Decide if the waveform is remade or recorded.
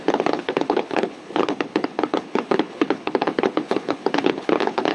remade